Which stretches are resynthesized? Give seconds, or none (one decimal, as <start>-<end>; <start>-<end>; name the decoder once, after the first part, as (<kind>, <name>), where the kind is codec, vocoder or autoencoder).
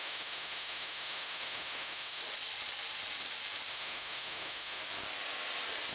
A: 0.0-2.2 (autoencoder, DAC-VAE); 3.7-4.8